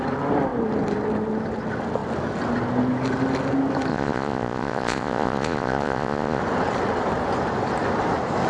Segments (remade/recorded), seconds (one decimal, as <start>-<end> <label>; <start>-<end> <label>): 0.0-3.9 recorded; 3.9-6.4 remade; 6.4-8.5 recorded